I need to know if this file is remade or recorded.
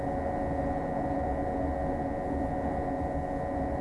recorded